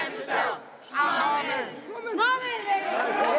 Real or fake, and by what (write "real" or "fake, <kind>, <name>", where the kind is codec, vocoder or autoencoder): real